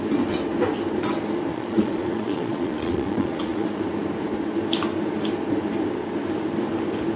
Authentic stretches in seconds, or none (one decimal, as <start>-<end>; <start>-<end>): 0.0-1.5; 3.8-7.2